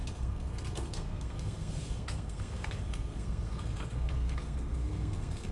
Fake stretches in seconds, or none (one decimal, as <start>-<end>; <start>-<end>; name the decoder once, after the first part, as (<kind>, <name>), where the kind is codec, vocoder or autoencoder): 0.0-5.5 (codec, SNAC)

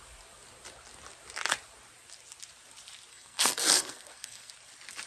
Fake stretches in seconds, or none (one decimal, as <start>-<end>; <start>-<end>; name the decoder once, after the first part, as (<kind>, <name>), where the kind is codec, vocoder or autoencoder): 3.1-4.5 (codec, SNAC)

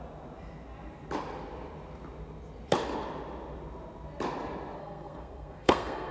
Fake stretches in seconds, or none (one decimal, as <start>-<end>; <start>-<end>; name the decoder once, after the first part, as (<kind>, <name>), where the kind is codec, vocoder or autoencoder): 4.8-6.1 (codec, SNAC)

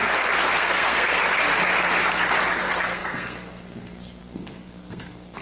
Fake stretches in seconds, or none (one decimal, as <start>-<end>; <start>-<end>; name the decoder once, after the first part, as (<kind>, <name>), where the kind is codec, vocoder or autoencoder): 0.5-1.2 (codec, SNAC); 2.6-5.4

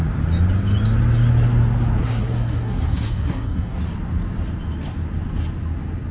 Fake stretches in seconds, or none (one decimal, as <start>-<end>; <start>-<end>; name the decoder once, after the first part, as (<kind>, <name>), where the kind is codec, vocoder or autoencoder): 2.0-3.8 (codec, SNAC)